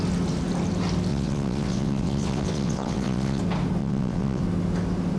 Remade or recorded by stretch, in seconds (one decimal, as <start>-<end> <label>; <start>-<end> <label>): 0.0-1.1 recorded; 1.1-3.4 remade; 3.4-3.8 recorded; 3.8-4.4 remade; 4.4-5.2 recorded